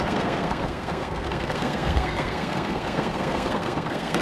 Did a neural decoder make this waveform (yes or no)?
yes